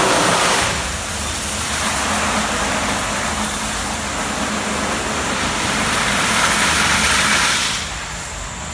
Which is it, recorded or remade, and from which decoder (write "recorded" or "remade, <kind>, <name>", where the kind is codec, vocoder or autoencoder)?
recorded